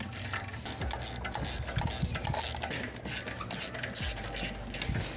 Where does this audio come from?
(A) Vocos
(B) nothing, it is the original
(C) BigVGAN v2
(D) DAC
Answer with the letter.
B